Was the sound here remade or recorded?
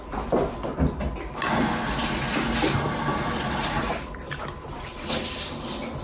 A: recorded